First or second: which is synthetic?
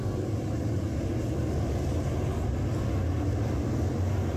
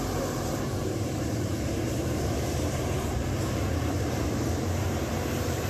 second